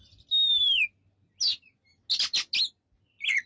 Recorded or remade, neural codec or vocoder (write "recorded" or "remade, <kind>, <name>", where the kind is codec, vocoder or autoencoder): recorded